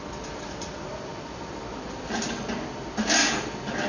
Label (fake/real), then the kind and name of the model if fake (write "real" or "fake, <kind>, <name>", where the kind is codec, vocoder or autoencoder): real